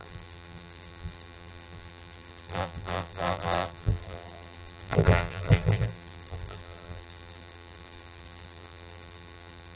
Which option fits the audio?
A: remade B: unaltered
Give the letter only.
A